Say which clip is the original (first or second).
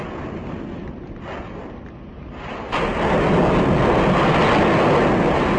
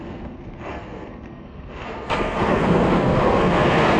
first